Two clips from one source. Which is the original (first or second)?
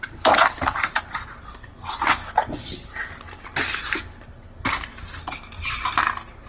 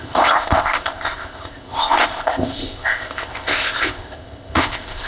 first